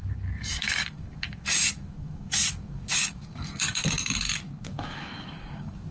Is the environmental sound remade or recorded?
remade